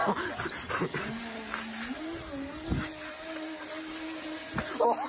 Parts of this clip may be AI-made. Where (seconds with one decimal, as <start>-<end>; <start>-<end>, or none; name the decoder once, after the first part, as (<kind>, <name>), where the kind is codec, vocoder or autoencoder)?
none